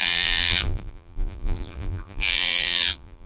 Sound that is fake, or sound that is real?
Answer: fake